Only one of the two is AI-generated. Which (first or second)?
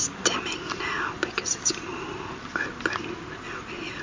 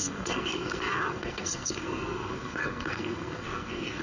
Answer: second